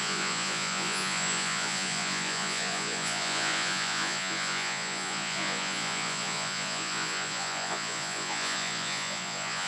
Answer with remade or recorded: remade